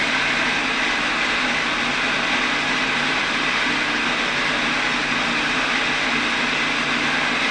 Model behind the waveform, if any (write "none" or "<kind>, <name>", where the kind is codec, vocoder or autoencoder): none